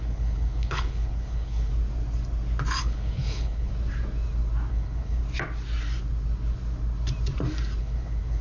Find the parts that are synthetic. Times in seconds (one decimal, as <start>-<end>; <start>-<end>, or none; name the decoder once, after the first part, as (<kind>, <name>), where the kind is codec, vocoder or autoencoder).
0.0-1.7 (codec, HILCodec); 2.8-3.7; 4.7-5.2; 7.8-8.4